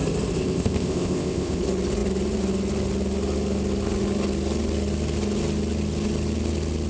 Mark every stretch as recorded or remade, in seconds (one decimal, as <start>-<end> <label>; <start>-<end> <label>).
0.0-0.4 recorded; 0.4-1.6 remade; 1.6-6.9 recorded